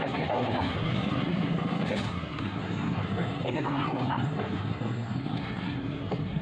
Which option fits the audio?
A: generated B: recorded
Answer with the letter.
A